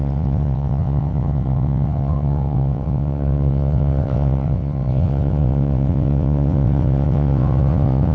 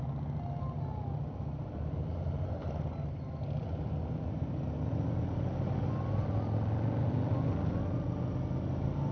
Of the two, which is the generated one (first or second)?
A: first